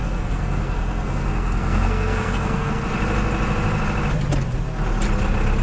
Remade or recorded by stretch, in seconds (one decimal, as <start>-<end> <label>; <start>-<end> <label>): 0.0-2.8 remade; 2.8-5.6 recorded